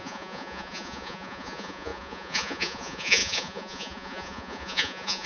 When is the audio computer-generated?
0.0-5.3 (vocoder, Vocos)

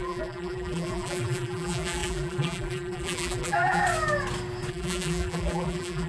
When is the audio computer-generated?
0.0-3.8 (vocoder, BigVGAN v2); 4.7-6.1

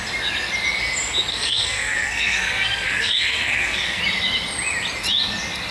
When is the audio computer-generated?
1.3-4.0 (codec, SNAC)

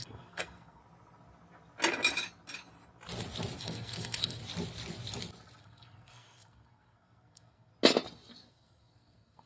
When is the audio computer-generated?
0.0-0.8 (codec, SNAC); 3.6-4.4; 5.6-7.7; 8.5-9.5

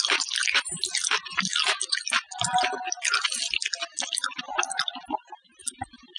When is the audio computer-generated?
none

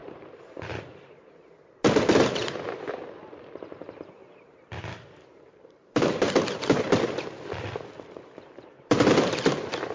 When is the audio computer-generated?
0.0-0.7 (vocoder, BigVGAN v2); 4.2-6.3

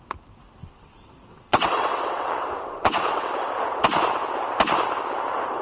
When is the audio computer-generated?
0.6-3.3 (vocoder, WaveNeXt)

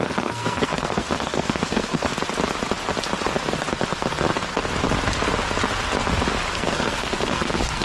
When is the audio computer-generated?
0.0-2.1 (codec, SNAC); 6.5-7.8